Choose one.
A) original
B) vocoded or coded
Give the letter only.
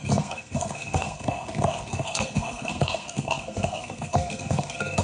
B